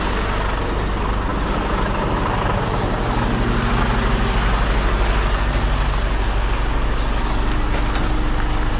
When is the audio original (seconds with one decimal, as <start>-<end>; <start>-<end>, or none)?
0.0-8.8